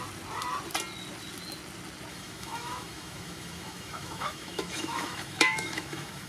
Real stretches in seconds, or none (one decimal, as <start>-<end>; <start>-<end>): 0.0-2.1